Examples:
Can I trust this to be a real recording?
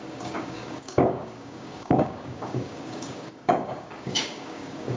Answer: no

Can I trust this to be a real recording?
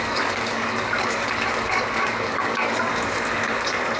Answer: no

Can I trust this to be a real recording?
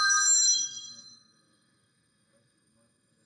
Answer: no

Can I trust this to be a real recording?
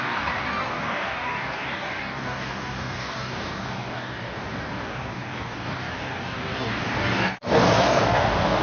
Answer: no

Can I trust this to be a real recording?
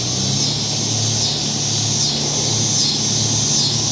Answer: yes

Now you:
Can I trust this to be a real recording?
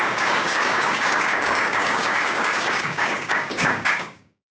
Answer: no